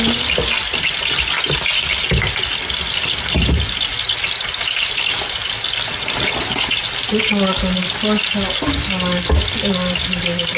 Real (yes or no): yes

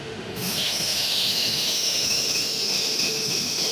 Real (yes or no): no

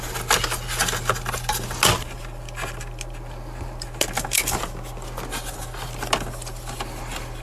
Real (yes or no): yes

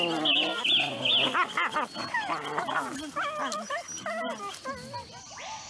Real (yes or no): yes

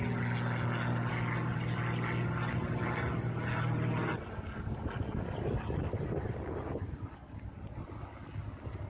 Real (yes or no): yes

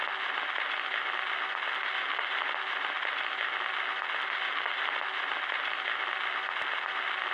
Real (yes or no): yes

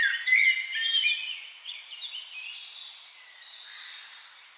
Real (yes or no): yes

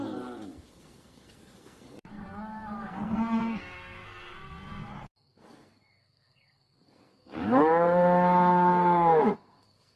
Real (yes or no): no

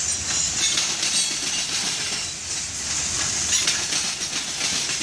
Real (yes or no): yes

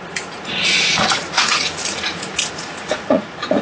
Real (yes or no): no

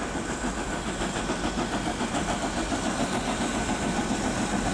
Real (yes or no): no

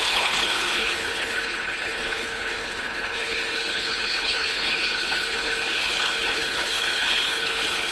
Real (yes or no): no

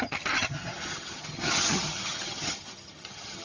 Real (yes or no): no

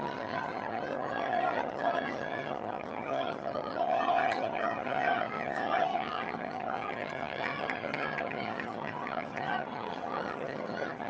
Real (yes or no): no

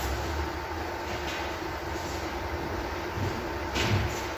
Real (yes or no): yes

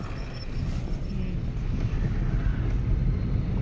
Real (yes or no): yes